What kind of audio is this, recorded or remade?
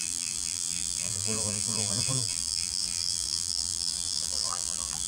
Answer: remade